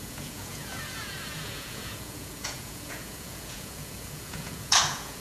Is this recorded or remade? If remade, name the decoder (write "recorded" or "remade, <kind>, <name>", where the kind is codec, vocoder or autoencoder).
remade, vocoder, Vocos